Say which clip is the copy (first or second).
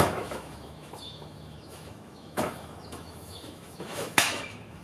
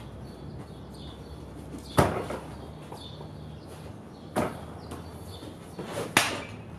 first